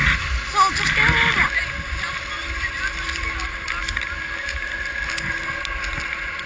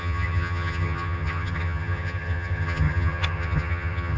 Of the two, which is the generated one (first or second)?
second